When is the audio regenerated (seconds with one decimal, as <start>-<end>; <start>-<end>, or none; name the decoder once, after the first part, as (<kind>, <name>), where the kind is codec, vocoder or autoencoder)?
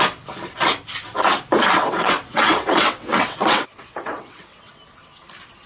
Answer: 1.8-4.8 (vocoder, WaveNeXt)